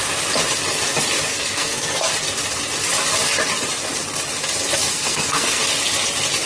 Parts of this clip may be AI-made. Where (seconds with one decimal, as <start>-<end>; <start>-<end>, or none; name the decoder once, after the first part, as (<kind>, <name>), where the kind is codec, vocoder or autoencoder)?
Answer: 1.3-2.1 (codec, SNAC); 4.9-5.6